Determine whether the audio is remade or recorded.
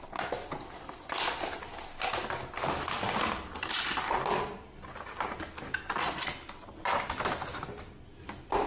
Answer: recorded